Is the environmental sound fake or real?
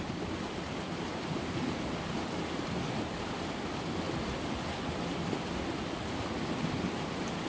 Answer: real